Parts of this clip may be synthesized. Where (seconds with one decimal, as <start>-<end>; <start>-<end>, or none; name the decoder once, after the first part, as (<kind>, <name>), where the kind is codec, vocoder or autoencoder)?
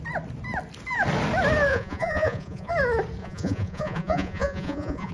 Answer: 1.7-2.7 (vocoder, Vocos); 3.2-5.1